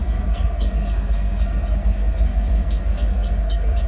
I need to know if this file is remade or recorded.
remade